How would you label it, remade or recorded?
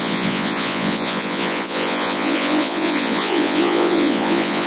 remade